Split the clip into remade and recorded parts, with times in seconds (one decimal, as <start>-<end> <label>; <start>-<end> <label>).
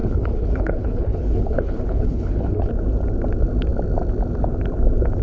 0.0-2.7 remade; 2.7-5.2 recorded